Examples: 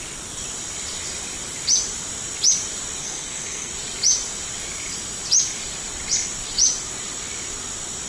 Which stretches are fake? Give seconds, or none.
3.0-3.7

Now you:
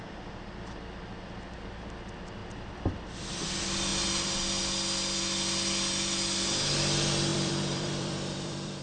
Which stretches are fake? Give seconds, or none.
2.4-3.3; 7.3-8.8

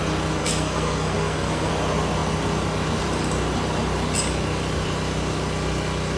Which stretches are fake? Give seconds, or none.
0.4-1.7

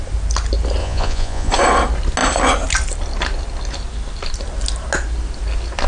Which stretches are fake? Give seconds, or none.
0.8-1.5